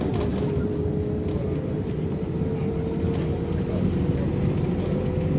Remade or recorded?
recorded